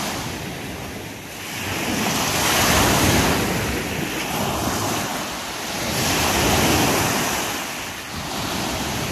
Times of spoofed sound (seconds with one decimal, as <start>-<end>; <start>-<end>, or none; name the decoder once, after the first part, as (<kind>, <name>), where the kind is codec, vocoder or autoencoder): none